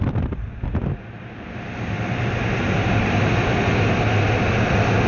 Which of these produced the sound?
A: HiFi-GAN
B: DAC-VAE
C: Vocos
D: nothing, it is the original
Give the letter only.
D